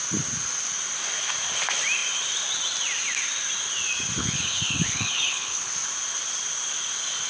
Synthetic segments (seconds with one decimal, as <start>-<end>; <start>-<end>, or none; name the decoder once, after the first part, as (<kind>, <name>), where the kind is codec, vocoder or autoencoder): 4.2-5.7 (codec, HILCodec)